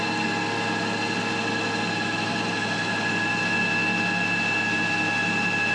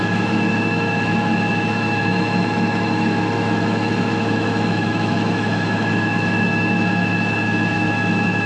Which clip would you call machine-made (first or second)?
second